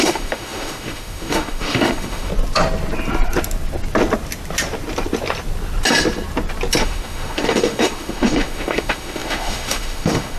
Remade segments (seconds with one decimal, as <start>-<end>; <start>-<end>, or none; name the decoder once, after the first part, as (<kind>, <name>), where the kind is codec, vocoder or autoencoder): 0.0-2.3 (autoencoder, DAC-VAE); 6.8-10.4

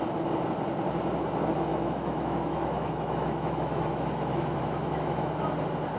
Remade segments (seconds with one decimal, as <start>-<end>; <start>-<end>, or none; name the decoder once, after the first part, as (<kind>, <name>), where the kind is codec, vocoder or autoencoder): 1.7-5.3 (autoencoder, DAC-VAE)

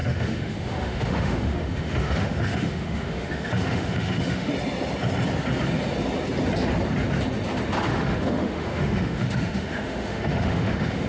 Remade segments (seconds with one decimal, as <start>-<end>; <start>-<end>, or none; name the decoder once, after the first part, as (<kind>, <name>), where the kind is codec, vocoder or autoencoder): 0.0-4.5 (autoencoder, DAC-VAE); 7.9-11.1

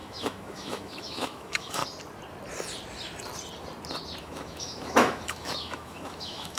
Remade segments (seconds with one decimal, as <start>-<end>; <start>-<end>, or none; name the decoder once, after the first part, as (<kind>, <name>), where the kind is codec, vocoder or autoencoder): 0.0-1.8 (autoencoder, DAC-VAE); 4.2-6.6

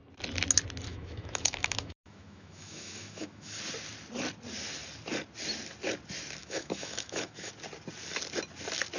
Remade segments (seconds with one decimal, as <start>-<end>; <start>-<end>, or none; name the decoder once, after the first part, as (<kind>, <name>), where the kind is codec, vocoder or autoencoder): 0.9-3.6 (autoencoder, DAC-VAE); 6.4-7.5